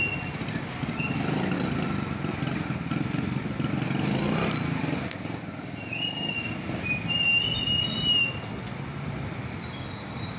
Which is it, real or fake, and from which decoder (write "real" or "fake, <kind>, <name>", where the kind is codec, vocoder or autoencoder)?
real